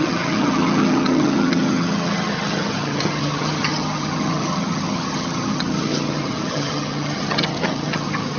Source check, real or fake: fake